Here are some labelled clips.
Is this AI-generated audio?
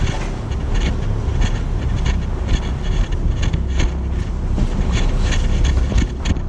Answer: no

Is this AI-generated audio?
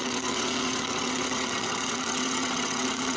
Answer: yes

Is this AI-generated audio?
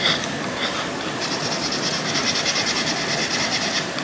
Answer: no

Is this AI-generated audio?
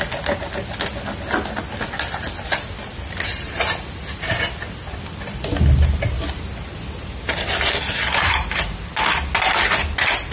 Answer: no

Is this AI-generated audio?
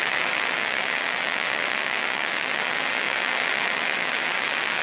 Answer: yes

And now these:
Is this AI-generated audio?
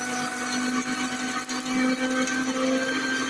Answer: no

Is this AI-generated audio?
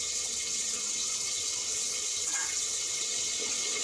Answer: yes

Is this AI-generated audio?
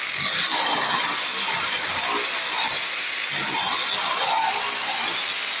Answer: no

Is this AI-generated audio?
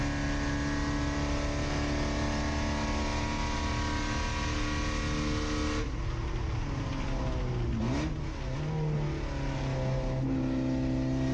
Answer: no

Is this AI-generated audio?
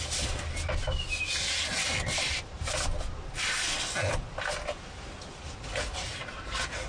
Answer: no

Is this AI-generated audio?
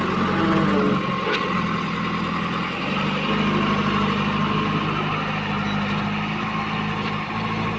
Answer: no